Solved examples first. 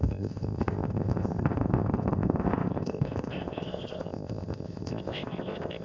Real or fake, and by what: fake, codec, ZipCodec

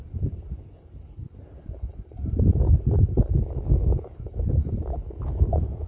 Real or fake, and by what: real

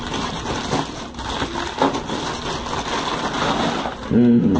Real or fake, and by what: real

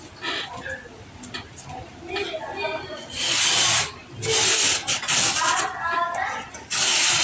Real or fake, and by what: real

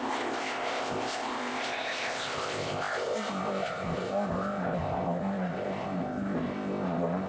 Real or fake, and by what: fake, codec, ZipCodec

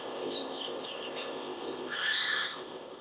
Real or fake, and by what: fake, codec, ZipCodec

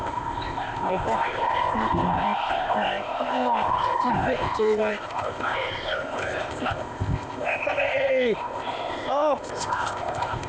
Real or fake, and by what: fake, codec, ZipCodec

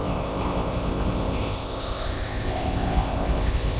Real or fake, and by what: fake, codec, ZipCodec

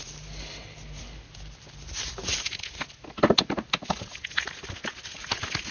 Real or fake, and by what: real